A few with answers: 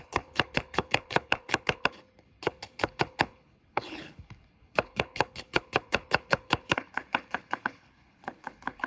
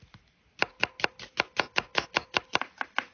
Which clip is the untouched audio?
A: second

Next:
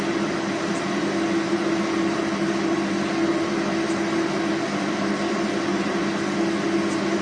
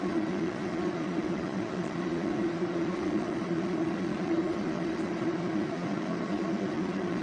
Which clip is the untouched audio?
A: first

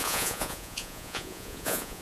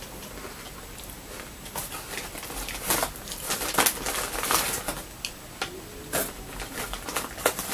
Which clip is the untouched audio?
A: second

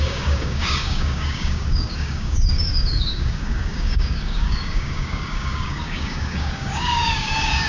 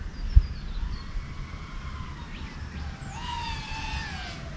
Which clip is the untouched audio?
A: second